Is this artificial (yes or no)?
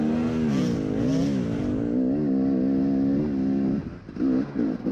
no